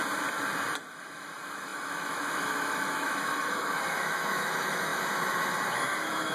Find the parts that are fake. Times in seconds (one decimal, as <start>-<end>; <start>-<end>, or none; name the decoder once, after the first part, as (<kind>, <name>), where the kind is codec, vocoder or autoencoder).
0.9-6.3 (autoencoder, DAC-VAE)